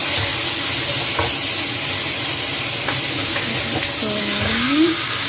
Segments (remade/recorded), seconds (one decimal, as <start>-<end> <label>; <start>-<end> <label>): 0.0-3.1 recorded; 3.1-3.5 remade; 3.5-4.2 recorded; 4.2-5.3 remade